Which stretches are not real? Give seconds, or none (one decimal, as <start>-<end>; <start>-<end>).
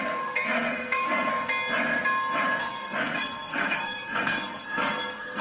0.0-1.3; 2.6-5.4